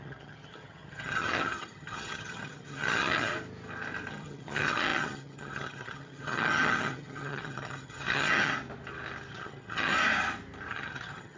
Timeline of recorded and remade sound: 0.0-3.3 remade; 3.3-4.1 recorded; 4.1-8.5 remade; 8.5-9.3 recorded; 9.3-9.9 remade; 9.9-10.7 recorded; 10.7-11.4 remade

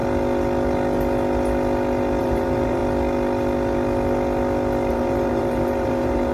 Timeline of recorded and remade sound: 0.0-2.2 recorded; 2.2-2.8 remade; 2.8-4.9 recorded; 4.9-6.3 remade

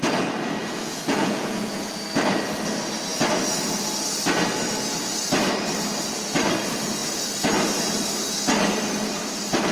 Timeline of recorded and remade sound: 0.0-0.6 recorded; 0.6-2.0 remade; 2.0-9.7 recorded

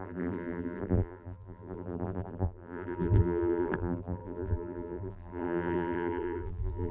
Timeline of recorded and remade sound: 0.0-6.9 remade

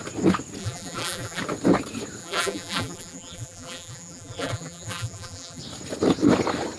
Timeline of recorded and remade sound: 0.0-0.6 recorded; 0.6-1.4 remade; 1.4-2.2 recorded; 2.2-5.6 remade; 5.6-6.8 recorded

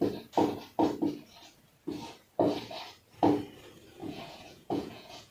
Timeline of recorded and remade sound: 0.0-4.0 recorded; 4.0-5.3 remade

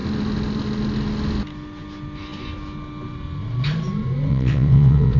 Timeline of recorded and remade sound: 0.0-4.3 recorded; 4.3-5.2 remade